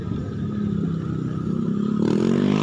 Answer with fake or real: real